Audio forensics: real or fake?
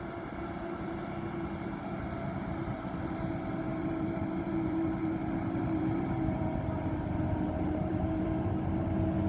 fake